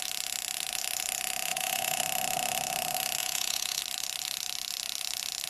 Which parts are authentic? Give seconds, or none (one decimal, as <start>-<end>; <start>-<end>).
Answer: 0.0-1.5; 2.0-3.2; 3.8-5.5